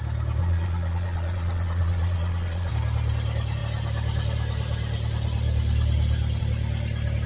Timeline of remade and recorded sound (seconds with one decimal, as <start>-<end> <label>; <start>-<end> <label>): 0.0-0.4 recorded; 0.4-2.7 remade; 2.7-7.3 recorded